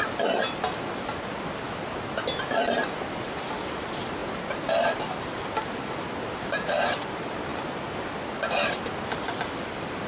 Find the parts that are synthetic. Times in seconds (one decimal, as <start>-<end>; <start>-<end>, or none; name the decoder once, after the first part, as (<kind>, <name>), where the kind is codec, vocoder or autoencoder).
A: 0.0-4.2 (vocoder, BigVGAN v2); 6.8-7.5; 9.2-10.1